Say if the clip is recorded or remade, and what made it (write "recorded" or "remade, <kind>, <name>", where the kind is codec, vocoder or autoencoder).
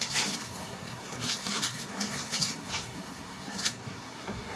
remade, codec, SNAC